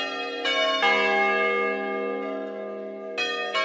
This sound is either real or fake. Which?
real